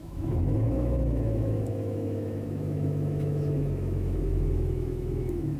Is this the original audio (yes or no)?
no